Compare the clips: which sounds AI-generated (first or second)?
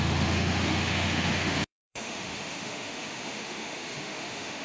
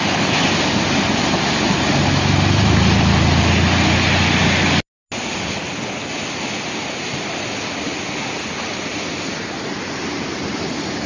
first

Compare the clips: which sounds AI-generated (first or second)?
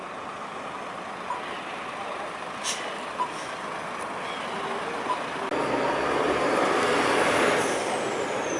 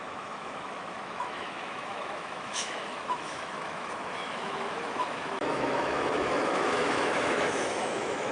second